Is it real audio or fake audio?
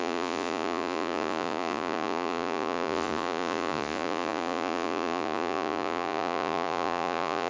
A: fake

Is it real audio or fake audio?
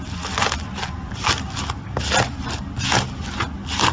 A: real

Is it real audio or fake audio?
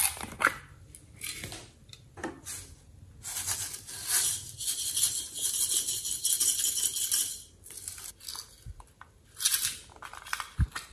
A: real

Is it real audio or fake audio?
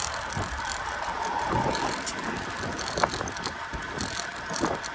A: real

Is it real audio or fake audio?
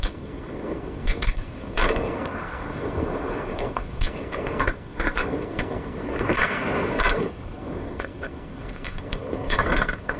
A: fake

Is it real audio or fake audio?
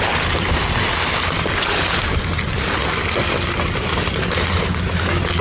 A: real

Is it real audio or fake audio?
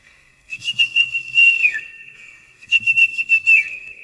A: fake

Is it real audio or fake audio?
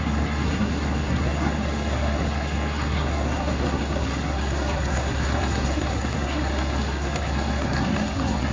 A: fake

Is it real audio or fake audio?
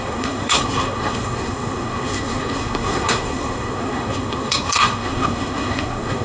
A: fake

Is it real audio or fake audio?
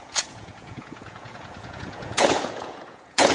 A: fake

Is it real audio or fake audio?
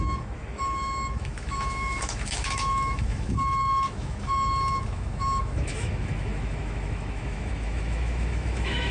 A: fake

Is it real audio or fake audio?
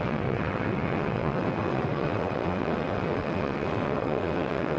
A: fake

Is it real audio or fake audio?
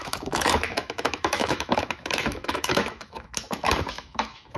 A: fake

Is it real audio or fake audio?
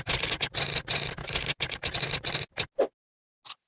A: real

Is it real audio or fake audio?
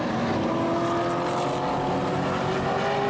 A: real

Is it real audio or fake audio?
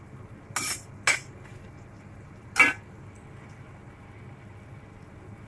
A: real